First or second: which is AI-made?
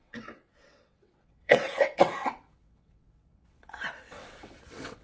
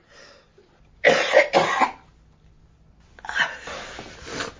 first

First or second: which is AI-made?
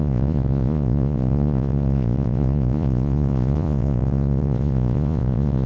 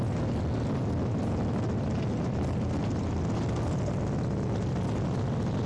first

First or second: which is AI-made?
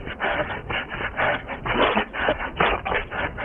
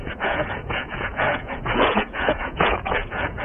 second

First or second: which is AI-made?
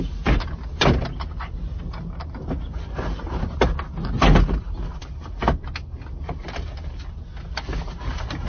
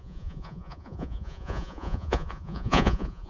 second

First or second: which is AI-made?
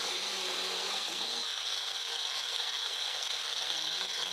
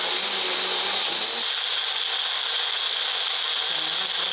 first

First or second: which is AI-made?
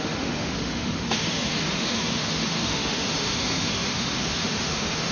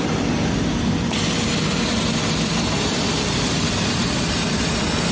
first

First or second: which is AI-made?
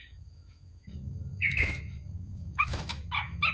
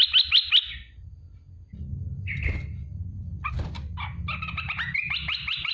first